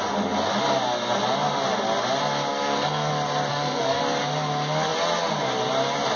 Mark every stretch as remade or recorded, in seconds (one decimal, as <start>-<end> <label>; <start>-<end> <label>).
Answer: 0.0-2.5 recorded; 2.5-3.1 remade; 3.1-3.5 recorded; 3.5-4.0 remade; 4.0-6.2 recorded